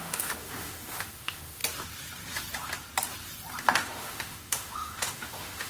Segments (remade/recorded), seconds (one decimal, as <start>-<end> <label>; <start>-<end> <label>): 0.0-1.6 remade; 1.6-3.6 recorded; 3.6-5.7 remade